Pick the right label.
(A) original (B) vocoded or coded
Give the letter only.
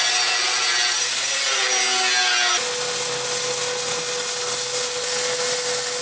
A